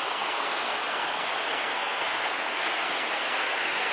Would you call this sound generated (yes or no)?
yes